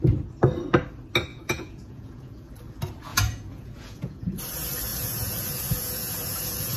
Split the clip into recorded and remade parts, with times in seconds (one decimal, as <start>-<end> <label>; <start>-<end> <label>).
0.0-1.3 recorded; 1.3-2.5 remade; 2.5-3.1 recorded; 3.1-4.4 remade; 4.4-4.9 recorded; 4.9-6.8 remade